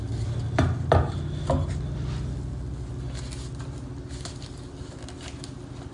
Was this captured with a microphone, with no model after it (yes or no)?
yes